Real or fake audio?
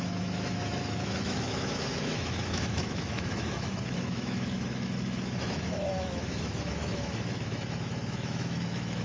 fake